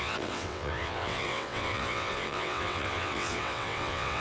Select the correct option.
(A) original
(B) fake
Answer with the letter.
B